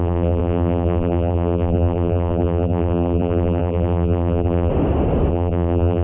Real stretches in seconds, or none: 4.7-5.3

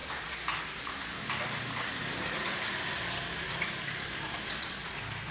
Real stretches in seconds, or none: 0.0-5.3

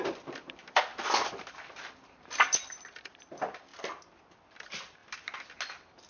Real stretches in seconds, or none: 3.7-4.2; 5.0-6.1